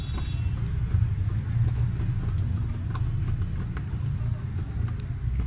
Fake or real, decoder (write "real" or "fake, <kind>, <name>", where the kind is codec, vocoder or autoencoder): real